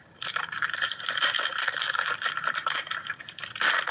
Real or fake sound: fake